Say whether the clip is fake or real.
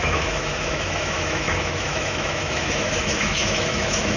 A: fake